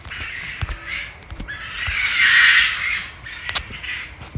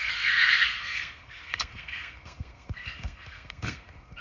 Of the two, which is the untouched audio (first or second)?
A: first